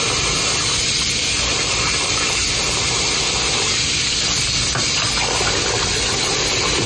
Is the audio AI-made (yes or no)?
no